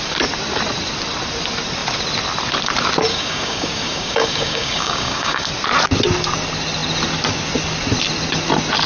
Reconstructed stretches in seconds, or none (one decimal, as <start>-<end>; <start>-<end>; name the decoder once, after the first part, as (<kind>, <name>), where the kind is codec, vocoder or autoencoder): 3.1-5.5 (codec, DAC)